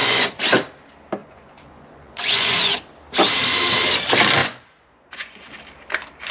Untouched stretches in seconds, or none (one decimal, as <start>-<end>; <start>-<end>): 0.5-1.2; 2.8-4.4; 5.5-6.3